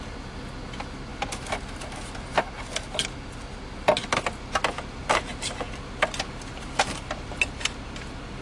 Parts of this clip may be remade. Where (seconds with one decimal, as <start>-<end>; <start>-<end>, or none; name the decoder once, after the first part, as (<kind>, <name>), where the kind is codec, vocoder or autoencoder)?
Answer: none